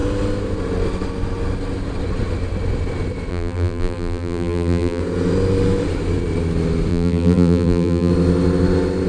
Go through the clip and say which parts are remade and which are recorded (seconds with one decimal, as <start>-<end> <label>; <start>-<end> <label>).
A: 0.0-3.3 recorded; 3.3-5.0 remade; 5.0-6.9 recorded; 6.9-8.1 remade; 8.1-9.1 recorded